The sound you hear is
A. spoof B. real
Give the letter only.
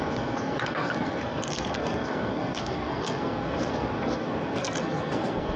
A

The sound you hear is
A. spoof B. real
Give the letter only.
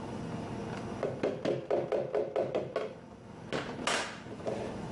B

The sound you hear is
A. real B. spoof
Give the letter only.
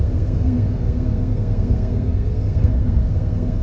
B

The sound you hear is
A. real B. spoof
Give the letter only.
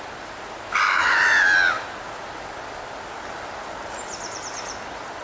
A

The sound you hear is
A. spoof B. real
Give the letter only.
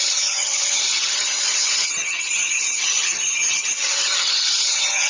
A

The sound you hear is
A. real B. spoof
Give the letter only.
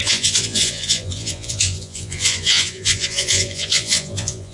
B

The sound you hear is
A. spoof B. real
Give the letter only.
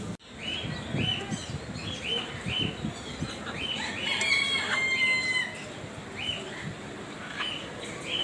B